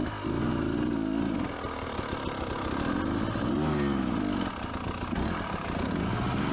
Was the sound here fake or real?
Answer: real